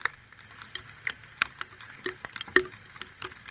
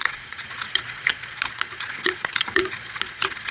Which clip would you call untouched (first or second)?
first